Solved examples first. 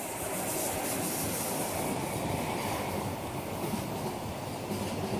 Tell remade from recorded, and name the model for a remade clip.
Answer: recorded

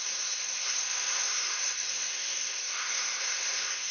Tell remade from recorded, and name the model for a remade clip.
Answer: remade, codec, SNAC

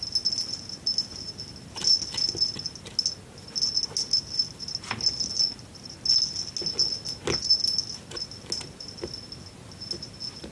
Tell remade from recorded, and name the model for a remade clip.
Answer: recorded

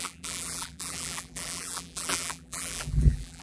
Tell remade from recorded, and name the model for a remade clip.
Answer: remade, vocoder, BigVGAN v2